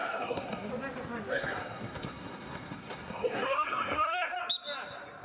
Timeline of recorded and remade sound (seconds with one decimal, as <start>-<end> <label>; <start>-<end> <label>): 0.0-0.7 remade; 0.7-1.3 recorded; 1.3-4.4 remade; 4.4-5.2 recorded